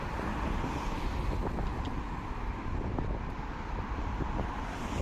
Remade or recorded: recorded